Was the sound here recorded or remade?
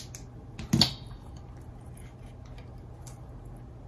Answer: recorded